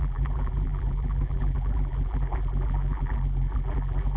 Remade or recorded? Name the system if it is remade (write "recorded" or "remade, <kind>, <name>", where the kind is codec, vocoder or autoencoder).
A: remade, vocoder, BigVGAN v2